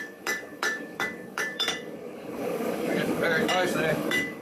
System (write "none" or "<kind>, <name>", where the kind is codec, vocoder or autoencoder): codec, DAC